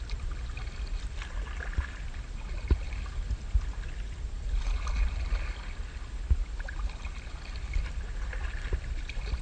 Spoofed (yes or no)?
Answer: no